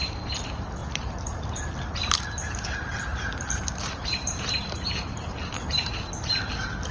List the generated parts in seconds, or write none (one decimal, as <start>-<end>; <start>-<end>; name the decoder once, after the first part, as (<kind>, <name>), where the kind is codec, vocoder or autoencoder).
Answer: 0.8-1.7 (vocoder, BigVGAN v2); 3.1-5.9